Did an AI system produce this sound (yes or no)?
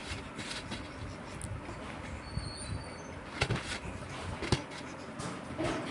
no